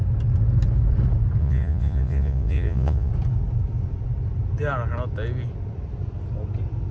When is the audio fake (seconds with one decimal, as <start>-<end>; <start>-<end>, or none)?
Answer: 1.4-3.1